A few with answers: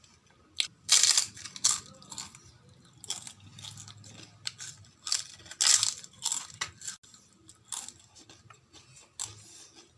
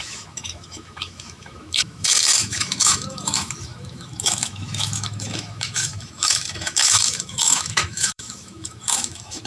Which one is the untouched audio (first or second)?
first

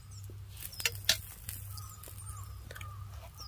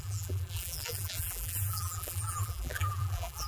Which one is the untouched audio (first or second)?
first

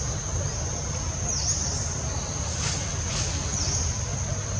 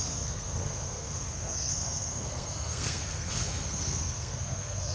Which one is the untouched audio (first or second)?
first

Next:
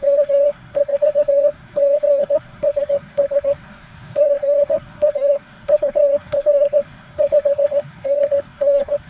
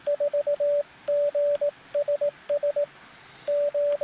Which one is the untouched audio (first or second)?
second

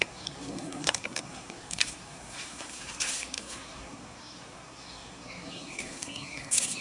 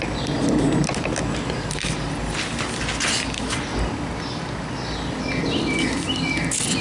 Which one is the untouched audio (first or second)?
second